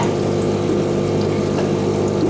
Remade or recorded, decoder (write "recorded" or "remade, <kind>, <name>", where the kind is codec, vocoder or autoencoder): recorded